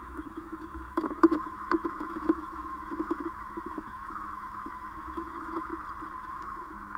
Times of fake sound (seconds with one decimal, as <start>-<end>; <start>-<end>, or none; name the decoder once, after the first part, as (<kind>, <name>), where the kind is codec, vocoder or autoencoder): 0.0-5.7 (autoencoder, DAC-VAE); 6.2-7.0